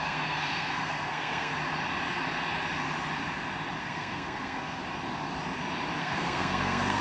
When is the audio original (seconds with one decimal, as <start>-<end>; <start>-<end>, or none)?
1.5-3.8; 4.8-6.0